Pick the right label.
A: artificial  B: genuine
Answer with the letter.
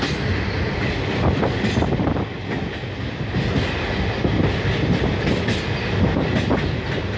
B